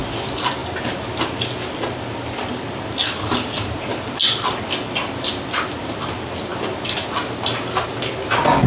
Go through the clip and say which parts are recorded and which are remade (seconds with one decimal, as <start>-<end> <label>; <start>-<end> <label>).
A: 0.0-8.7 recorded